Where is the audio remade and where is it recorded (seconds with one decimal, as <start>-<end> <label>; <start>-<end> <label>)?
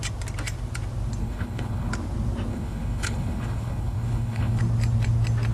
0.0-1.2 recorded; 1.2-1.9 remade; 1.9-2.5 recorded; 2.5-4.6 remade; 4.6-5.5 recorded